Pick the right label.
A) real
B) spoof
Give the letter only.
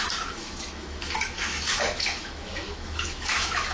B